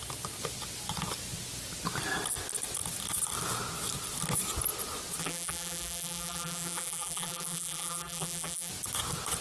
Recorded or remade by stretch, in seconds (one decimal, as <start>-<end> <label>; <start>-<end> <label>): 0.0-5.2 recorded; 5.2-8.7 remade; 8.7-9.4 recorded